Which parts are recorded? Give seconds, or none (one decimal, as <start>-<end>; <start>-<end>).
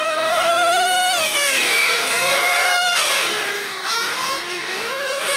0.5-1.2